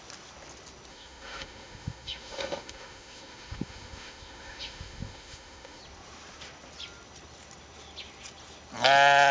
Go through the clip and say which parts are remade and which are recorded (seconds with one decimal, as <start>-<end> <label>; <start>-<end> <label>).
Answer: 0.0-0.9 recorded; 0.9-5.8 remade; 5.8-9.3 recorded